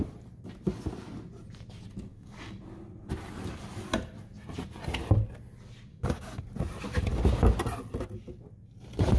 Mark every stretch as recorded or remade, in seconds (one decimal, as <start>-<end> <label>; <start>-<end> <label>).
0.0-2.1 recorded; 2.1-2.6 remade; 2.6-5.9 recorded; 5.9-6.4 remade; 6.4-9.2 recorded